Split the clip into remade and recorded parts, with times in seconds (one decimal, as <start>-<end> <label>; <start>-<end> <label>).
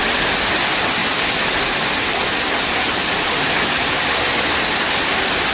0.0-5.5 recorded